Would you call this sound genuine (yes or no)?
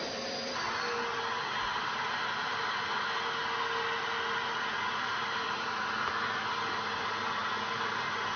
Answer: yes